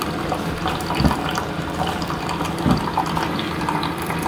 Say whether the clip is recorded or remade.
remade